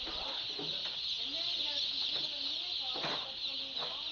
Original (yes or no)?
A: yes